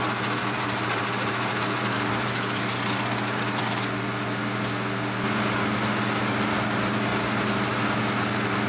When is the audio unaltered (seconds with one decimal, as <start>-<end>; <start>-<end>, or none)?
0.0-0.4; 2.3-7.1; 8.0-8.7